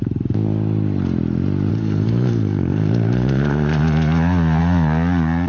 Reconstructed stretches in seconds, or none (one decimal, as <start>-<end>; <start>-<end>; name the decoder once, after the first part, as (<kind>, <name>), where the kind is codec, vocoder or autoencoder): 1.7-3.8 (codec, SNAC)